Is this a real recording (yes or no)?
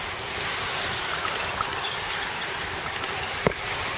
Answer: no